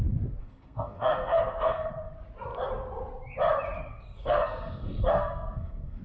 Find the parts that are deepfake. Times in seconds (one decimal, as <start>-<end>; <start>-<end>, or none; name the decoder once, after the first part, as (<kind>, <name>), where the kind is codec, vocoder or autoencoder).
0.4-1.9 (codec, SNAC); 3.9-6.0